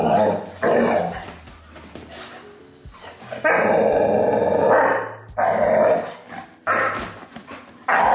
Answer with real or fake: real